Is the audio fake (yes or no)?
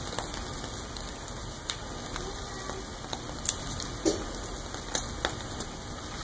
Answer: no